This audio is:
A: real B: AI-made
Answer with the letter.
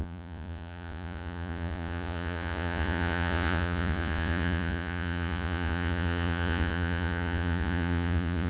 B